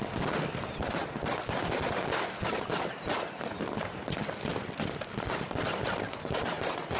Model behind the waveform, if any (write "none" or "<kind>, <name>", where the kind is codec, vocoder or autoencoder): none